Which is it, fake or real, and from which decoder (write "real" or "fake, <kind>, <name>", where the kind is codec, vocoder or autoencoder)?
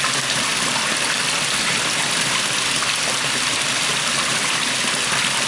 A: real